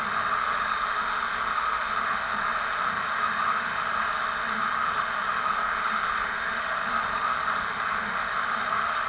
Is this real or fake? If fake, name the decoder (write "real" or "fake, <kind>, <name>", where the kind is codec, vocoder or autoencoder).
fake, autoencoder, DAC-VAE